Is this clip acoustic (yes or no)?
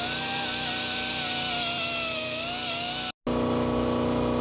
yes